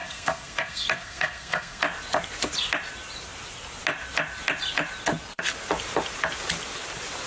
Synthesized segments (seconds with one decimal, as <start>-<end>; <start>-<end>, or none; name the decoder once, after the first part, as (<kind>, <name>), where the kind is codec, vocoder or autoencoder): 0.0-1.8 (codec, SNAC)